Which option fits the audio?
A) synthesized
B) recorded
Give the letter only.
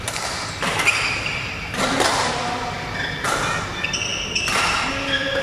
B